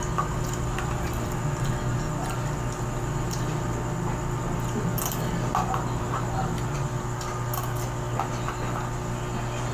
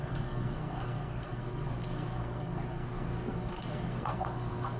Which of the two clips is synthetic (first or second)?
second